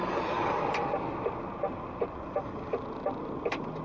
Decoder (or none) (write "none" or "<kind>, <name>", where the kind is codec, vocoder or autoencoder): none